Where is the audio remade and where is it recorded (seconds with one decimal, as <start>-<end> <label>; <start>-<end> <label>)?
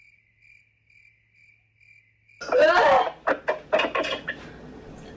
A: 0.0-5.2 recorded